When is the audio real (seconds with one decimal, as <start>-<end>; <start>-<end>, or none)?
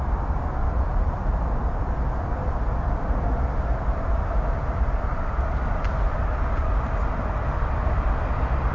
0.0-8.7